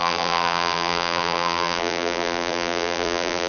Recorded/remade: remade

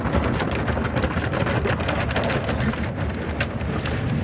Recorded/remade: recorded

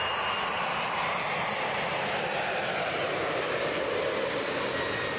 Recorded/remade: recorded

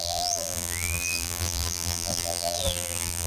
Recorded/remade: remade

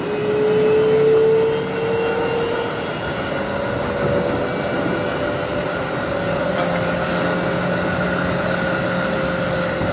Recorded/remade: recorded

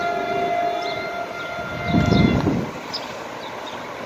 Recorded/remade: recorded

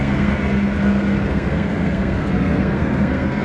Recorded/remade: remade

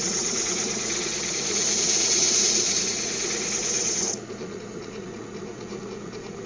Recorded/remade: remade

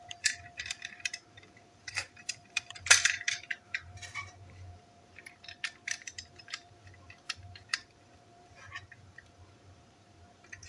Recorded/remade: remade